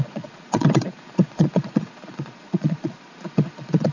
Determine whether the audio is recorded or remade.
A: remade